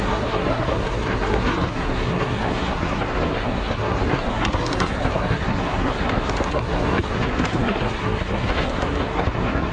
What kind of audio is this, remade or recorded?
remade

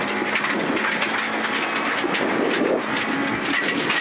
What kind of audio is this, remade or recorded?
recorded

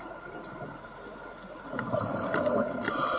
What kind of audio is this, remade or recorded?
recorded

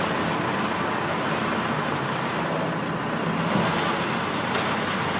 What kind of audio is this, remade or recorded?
recorded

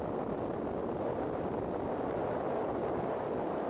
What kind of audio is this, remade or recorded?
recorded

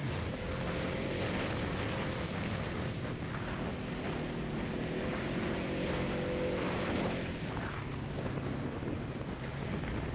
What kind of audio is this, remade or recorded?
recorded